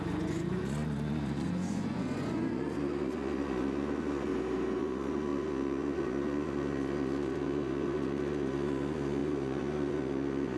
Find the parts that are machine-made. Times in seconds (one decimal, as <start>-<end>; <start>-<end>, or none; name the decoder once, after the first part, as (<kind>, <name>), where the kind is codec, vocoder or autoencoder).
0.0-4.3 (vocoder, Vocos); 4.8-10.6